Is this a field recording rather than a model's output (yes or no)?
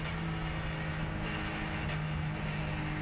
yes